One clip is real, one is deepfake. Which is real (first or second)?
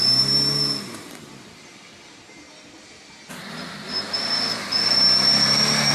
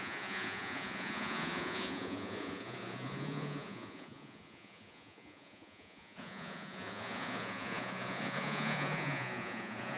first